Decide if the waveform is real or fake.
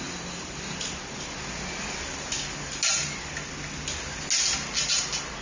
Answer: real